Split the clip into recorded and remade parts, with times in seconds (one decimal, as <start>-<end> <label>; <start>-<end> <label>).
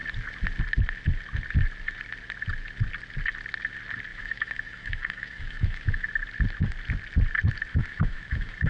0.0-4.1 recorded; 4.1-6.1 remade; 6.1-7.7 recorded; 7.7-8.7 remade